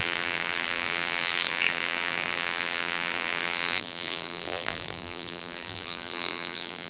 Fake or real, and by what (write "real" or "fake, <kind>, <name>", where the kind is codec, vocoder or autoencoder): fake, vocoder, BigVGAN v2